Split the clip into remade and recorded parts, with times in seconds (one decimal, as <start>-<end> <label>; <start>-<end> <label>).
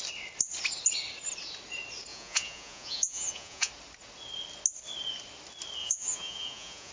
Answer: 0.0-2.1 recorded; 2.1-3.7 remade; 3.7-5.8 recorded; 5.8-6.9 remade